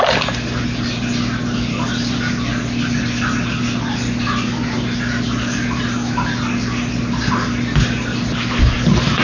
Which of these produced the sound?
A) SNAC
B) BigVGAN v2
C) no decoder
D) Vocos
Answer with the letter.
C